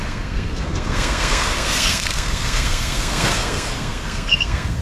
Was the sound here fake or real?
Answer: fake